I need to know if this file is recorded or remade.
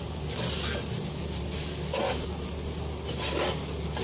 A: recorded